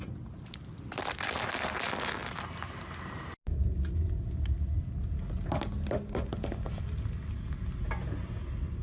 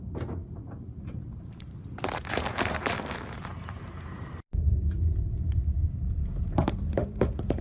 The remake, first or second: second